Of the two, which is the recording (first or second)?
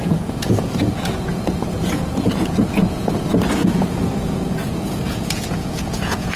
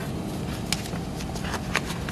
second